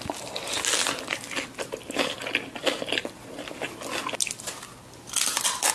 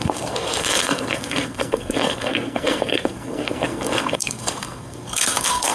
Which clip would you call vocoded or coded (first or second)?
second